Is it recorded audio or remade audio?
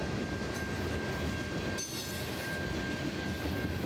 recorded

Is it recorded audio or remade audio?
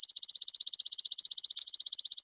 remade